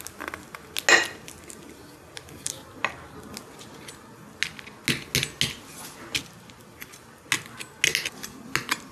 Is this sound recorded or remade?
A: recorded